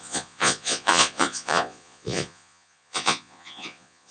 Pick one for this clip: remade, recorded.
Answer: remade